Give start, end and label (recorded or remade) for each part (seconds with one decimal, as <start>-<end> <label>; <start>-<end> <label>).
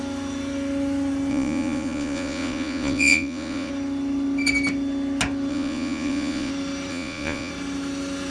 0.0-1.3 recorded; 1.3-3.7 remade; 3.7-5.5 recorded; 5.5-6.5 remade; 6.5-6.9 recorded; 6.9-7.5 remade; 7.5-8.3 recorded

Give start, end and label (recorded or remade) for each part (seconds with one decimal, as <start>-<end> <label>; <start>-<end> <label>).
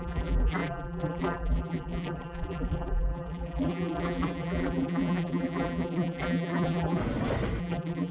0.0-7.0 remade; 7.0-7.6 recorded; 7.6-8.1 remade